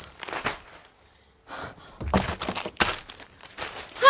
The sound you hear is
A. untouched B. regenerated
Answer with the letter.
A